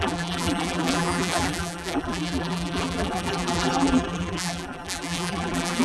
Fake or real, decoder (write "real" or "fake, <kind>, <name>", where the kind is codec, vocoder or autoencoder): fake, vocoder, BigVGAN v2